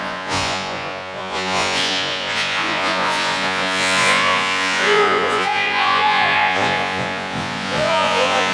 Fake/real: fake